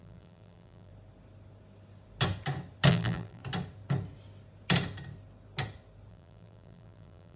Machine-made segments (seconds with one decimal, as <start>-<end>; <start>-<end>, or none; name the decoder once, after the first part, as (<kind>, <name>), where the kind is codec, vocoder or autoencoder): 0.0-0.9 (vocoder, BigVGAN v2); 2.9-3.4; 6.1-7.4